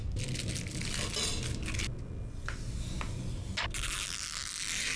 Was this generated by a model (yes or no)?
no